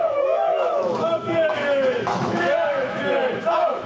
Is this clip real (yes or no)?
no